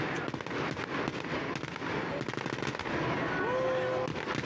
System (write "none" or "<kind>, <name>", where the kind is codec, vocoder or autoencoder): none